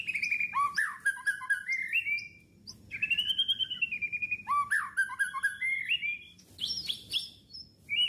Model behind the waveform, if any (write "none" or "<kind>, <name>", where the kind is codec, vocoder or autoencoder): none